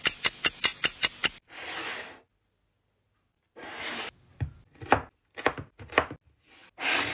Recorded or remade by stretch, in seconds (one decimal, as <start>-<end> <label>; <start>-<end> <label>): 0.0-7.1 recorded